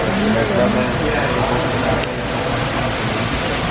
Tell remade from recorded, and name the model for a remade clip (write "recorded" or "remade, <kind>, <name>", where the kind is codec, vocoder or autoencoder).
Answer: recorded